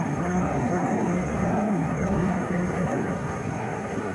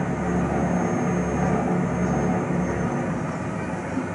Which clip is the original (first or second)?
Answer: second